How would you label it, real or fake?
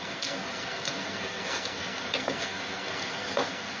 fake